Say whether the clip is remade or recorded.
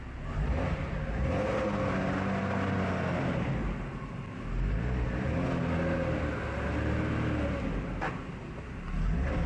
recorded